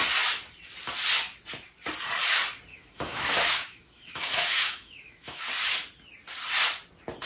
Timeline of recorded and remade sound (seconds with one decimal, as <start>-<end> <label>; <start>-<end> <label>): 0.0-2.7 recorded; 2.7-5.4 remade; 5.4-7.3 recorded